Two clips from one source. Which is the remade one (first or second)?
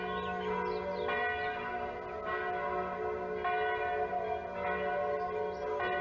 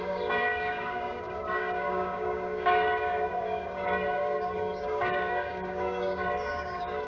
second